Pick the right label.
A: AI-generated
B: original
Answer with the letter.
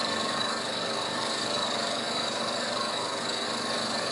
A